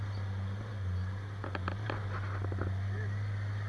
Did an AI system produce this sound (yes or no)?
no